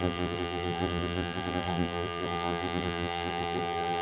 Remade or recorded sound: remade